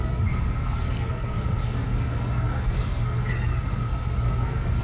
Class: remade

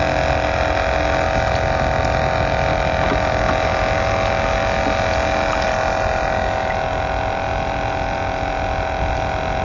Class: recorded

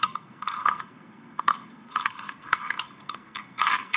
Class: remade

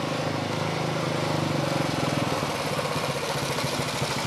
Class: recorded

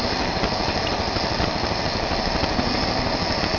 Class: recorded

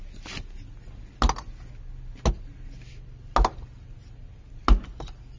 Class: recorded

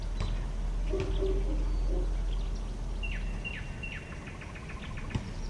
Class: recorded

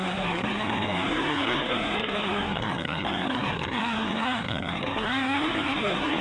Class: remade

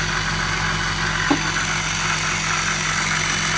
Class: recorded